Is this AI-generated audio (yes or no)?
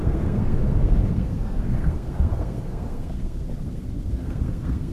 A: yes